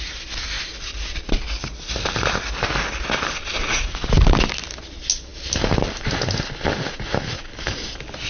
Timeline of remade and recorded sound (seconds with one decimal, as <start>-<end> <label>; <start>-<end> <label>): 0.0-3.6 recorded; 3.6-4.2 remade; 4.2-8.3 recorded